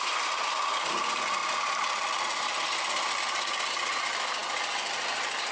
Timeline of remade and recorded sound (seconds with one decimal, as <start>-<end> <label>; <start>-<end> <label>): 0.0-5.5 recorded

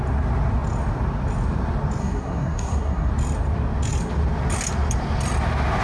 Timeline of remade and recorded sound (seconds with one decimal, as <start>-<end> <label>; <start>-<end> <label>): 0.0-2.0 recorded; 2.0-3.1 remade; 3.1-5.8 recorded

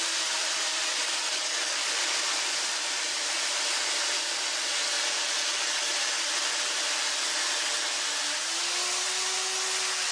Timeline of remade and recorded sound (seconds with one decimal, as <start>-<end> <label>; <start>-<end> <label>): 0.0-1.0 recorded; 1.0-1.9 remade; 1.9-10.1 recorded